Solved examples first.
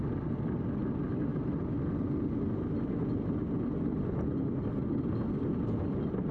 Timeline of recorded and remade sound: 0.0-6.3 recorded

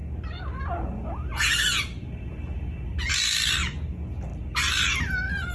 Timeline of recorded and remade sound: 0.0-5.5 recorded

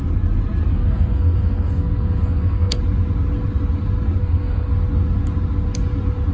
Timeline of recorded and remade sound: 0.0-0.7 recorded; 0.7-2.8 remade; 2.8-4.2 recorded; 4.2-4.7 remade; 4.7-6.3 recorded